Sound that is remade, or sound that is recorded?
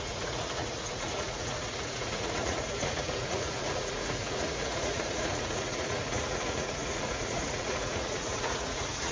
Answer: remade